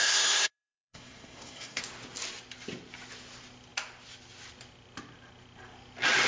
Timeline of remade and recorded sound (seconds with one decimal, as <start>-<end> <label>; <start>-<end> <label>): 0.0-1.8 remade; 1.8-6.3 recorded